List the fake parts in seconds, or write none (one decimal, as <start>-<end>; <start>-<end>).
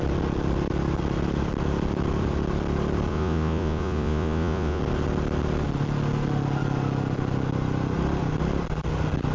3.1-4.8